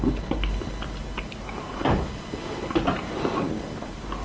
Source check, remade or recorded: recorded